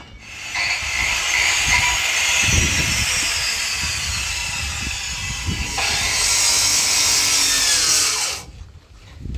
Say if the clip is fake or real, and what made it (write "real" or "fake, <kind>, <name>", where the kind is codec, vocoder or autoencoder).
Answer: real